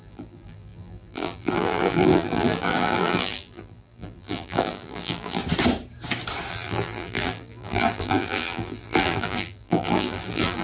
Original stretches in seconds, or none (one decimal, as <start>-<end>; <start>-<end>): 5.4-6.5